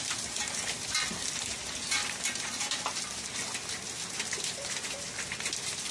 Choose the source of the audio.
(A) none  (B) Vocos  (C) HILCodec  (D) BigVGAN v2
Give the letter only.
A